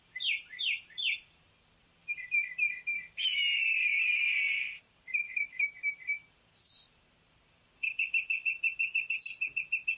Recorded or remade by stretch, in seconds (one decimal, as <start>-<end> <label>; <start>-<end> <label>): 0.0-8.5 remade; 8.5-9.4 recorded; 9.4-10.0 remade